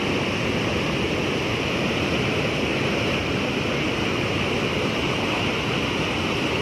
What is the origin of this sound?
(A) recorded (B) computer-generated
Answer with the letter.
A